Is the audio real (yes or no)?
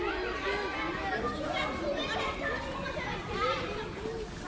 yes